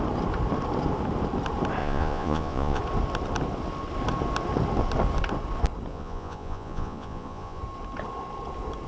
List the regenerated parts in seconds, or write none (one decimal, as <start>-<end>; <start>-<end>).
1.8-2.8; 5.9-7.6